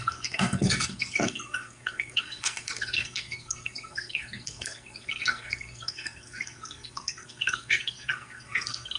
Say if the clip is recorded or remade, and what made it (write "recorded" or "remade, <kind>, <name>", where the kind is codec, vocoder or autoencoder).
remade, codec, SNAC